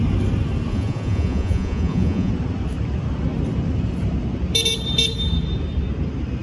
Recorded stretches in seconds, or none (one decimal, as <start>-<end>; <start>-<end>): 0.0-0.7; 2.3-6.4